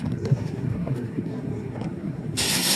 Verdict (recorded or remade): remade